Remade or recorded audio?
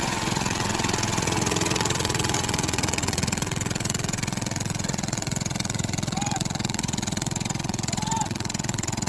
remade